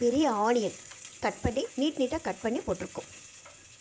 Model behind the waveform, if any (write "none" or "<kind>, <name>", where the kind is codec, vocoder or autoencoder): vocoder, Vocos